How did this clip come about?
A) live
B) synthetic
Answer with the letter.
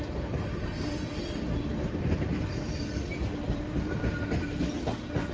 A